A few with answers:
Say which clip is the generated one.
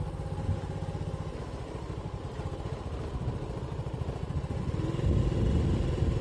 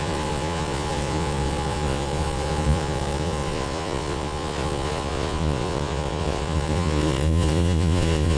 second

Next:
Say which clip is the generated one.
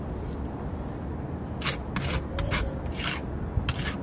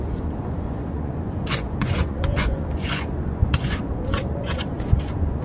second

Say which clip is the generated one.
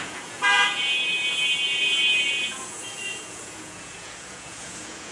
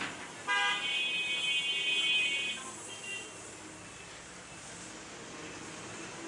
first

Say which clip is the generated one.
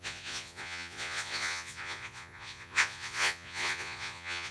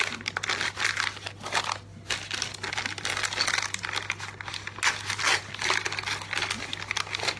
first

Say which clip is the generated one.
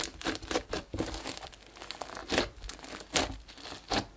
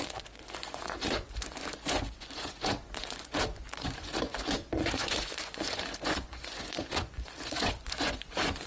second